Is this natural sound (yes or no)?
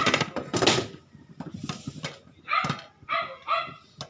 yes